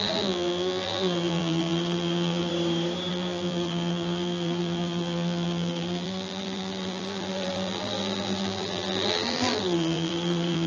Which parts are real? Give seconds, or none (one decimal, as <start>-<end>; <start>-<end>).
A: 2.5-3.1